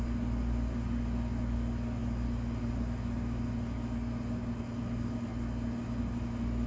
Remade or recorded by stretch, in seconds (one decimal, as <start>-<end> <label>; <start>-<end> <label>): 0.0-6.7 recorded